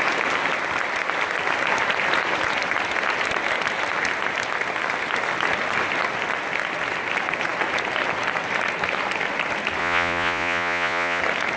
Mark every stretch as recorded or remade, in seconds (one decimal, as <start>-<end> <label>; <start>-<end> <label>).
0.0-9.8 recorded; 9.8-11.2 remade; 11.2-11.6 recorded